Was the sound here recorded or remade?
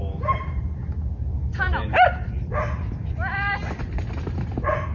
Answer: recorded